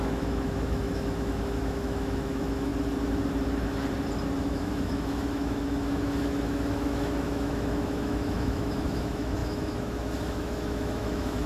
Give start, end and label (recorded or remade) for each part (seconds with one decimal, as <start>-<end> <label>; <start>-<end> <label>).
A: 0.0-2.7 remade; 2.7-4.4 recorded; 4.4-11.5 remade